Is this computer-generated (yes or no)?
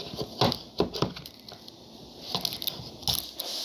no